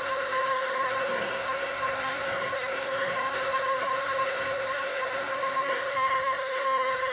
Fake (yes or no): yes